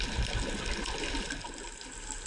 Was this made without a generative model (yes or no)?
yes